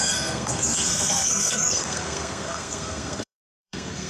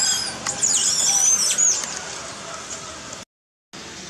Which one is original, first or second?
second